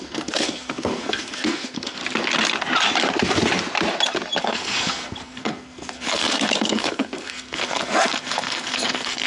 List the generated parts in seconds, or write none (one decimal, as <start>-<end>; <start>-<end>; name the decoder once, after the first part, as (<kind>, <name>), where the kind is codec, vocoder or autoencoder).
0.0-2.0 (codec, SNAC); 4.4-9.3